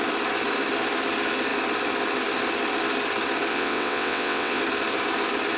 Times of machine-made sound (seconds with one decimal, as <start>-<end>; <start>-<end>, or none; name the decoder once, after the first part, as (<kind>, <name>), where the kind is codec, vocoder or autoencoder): 3.5-4.6 (vocoder, WaveNeXt)